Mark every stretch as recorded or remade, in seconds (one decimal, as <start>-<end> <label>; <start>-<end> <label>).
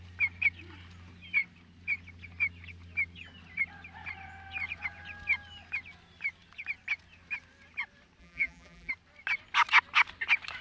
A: 0.0-8.2 recorded; 8.2-8.9 remade; 8.9-10.6 recorded